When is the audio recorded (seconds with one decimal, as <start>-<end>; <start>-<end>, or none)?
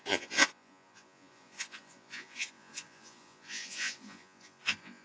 none